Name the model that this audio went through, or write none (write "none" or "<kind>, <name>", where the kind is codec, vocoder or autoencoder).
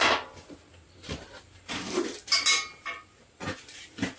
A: none